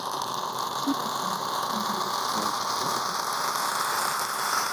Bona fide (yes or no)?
yes